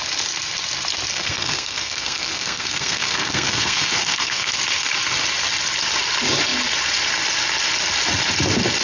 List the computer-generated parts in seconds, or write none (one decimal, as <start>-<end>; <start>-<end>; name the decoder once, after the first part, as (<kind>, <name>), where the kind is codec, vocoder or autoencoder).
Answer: 1.1-4.6 (codec, SNAC)